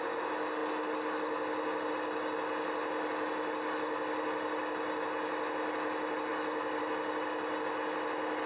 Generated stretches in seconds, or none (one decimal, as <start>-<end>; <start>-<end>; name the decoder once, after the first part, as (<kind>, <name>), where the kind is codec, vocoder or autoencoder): none